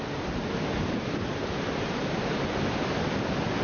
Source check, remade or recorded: recorded